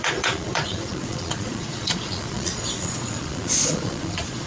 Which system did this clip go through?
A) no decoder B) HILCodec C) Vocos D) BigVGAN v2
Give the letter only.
C